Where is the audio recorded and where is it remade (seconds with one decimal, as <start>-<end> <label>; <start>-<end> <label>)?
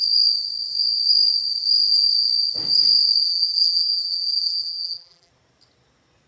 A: 0.0-3.2 recorded; 3.2-5.3 remade; 5.3-6.3 recorded